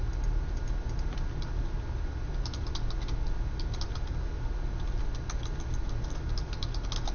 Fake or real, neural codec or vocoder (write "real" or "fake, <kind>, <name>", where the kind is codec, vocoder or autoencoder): real